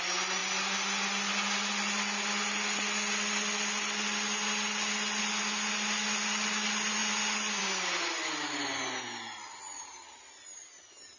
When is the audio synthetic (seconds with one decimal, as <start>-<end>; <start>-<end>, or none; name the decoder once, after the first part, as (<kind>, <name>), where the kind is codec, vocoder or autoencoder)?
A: none